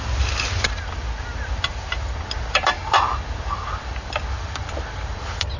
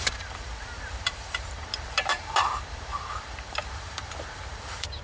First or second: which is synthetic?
second